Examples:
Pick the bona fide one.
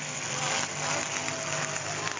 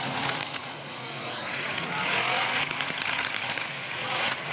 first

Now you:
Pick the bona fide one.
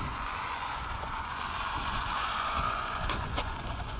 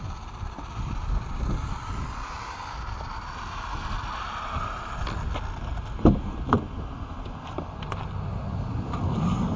second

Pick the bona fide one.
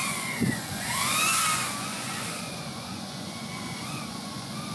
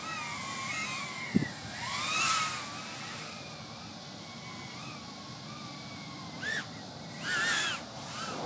second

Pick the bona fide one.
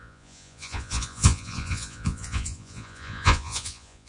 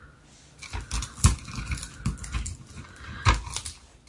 second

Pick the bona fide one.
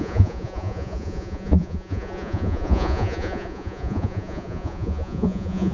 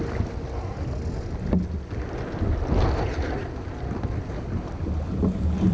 second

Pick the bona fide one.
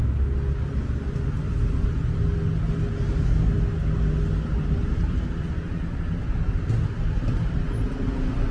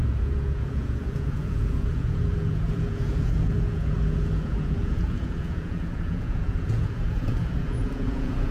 first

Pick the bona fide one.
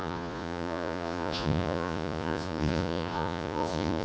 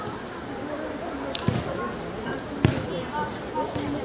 second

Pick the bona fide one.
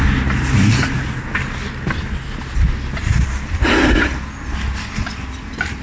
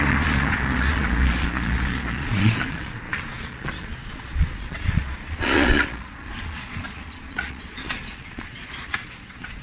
first